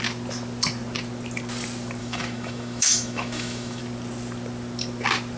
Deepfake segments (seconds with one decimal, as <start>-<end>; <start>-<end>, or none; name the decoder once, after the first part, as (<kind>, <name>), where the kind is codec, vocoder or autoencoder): 2.0-3.8 (autoencoder, DAC-VAE)